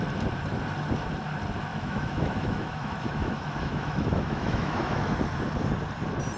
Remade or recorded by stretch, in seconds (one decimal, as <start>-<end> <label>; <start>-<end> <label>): 0.0-1.7 recorded; 1.7-5.2 remade; 5.2-6.4 recorded

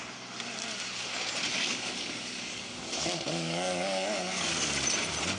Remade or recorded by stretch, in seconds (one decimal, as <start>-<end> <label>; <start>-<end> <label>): 0.0-1.5 recorded; 1.5-4.6 remade; 4.6-5.4 recorded

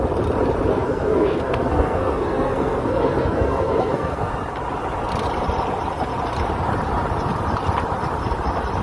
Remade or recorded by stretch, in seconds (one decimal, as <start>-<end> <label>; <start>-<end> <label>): 0.0-0.7 recorded; 0.7-4.3 remade; 4.3-8.8 recorded

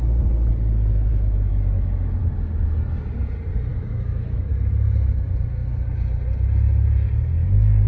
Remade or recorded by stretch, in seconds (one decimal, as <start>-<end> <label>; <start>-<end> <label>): 0.0-1.1 recorded; 1.1-2.2 remade; 2.2-3.7 recorded; 3.7-4.5 remade; 4.5-7.4 recorded; 7.4-7.9 remade

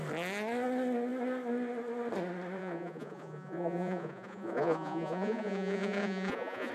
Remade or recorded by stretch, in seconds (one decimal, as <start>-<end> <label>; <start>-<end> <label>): 0.0-2.6 recorded; 2.6-6.7 remade

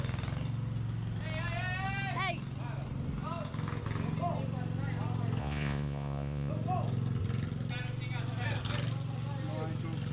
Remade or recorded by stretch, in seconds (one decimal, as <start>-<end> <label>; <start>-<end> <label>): 0.0-5.4 recorded; 5.4-6.5 remade; 6.5-10.1 recorded

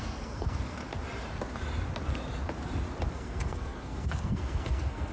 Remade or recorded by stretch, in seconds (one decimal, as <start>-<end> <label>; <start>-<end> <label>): 0.0-0.8 remade; 0.8-3.1 recorded; 3.1-5.1 remade